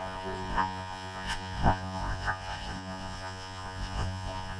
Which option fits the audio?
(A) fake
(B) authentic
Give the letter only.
A